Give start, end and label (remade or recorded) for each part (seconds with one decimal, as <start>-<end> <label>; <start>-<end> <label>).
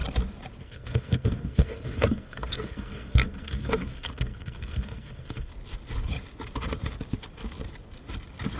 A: 0.0-0.6 recorded; 0.6-5.5 remade; 5.5-8.6 recorded